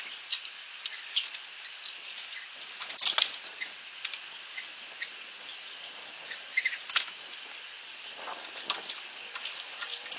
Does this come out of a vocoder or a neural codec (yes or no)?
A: no